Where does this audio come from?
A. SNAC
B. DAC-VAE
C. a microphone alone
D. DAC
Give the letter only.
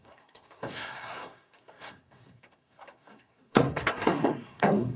A